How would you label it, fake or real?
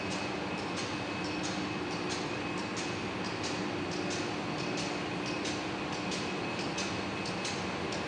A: real